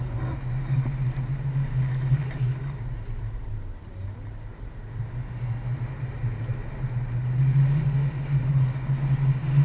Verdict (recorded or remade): recorded